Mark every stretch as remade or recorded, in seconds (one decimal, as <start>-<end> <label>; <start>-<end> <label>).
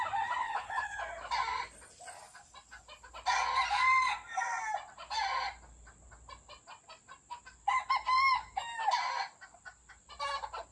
0.0-0.4 recorded; 0.4-1.0 remade; 1.0-10.7 recorded